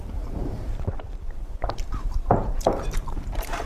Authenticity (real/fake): fake